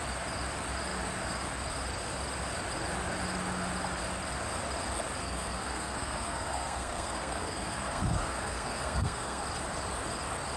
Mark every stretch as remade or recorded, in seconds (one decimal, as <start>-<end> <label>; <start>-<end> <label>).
0.0-5.2 recorded; 5.2-9.4 remade; 9.4-10.6 recorded